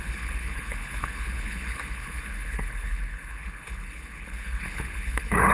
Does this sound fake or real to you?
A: fake